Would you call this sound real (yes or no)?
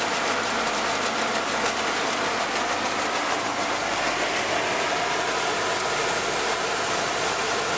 yes